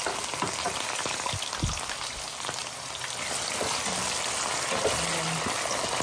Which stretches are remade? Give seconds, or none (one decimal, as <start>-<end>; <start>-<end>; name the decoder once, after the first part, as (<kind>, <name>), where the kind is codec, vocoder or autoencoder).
none